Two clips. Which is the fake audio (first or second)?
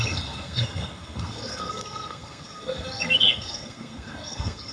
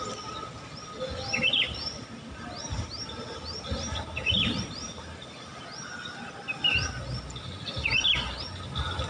first